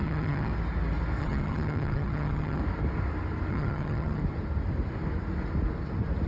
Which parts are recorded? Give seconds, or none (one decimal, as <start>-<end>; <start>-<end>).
0.5-1.2; 2.6-3.5; 4.2-6.3